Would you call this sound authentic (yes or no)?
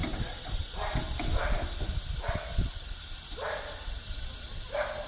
yes